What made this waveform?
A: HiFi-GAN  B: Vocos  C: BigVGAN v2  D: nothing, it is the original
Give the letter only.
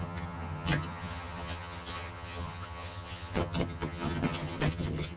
A